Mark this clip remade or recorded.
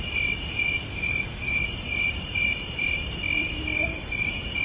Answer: remade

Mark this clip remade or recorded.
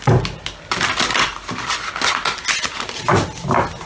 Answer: recorded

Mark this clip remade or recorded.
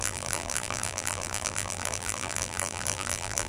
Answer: remade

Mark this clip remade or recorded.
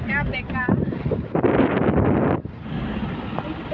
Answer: recorded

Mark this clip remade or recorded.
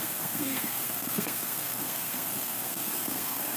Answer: remade